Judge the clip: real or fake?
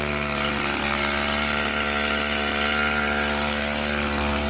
real